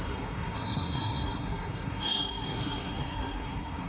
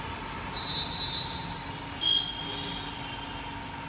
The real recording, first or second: second